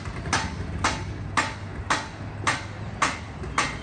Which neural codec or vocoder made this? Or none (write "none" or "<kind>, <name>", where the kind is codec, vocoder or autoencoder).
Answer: none